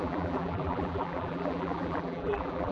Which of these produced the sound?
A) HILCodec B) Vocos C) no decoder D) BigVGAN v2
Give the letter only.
D